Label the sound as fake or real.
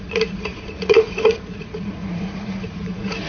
fake